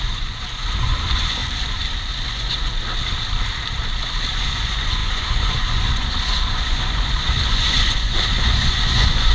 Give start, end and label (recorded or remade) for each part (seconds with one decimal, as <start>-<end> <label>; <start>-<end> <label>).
0.0-1.4 remade; 1.4-2.3 recorded; 2.3-2.7 remade; 2.7-4.3 recorded; 4.3-9.3 remade

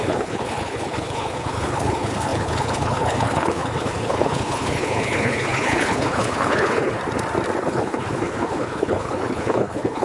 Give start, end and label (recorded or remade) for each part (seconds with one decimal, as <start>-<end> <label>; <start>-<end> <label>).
0.0-7.0 remade; 7.0-7.6 recorded; 7.6-10.0 remade